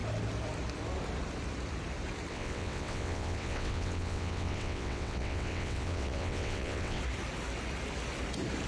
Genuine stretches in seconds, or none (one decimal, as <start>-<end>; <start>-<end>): 0.0-2.3; 7.0-8.7